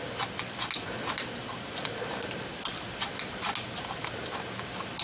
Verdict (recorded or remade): recorded